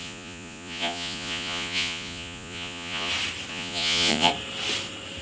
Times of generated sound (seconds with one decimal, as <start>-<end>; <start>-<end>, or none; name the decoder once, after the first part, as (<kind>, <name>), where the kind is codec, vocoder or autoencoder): 0.0-3.1 (vocoder, Vocos); 3.5-4.3